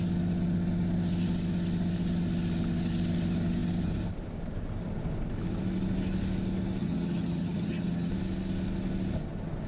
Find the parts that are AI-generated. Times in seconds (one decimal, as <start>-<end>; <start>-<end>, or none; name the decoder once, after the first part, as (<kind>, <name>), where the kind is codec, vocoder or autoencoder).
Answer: 6.8-8.1 (vocoder, HiFi-GAN)